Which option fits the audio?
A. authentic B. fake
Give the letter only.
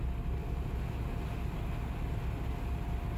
A